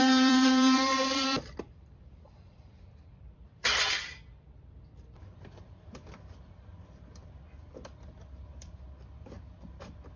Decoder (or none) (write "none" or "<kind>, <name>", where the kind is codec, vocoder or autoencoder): vocoder, BigVGAN v2